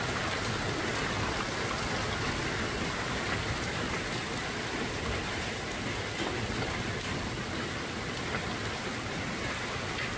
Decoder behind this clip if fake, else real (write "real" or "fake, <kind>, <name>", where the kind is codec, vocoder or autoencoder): real